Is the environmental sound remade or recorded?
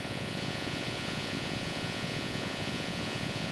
remade